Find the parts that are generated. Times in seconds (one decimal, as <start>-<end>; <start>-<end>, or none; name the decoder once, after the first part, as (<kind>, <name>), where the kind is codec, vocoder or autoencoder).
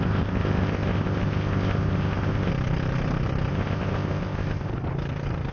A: 0.0-2.5 (codec, ZipCodec); 3.5-4.7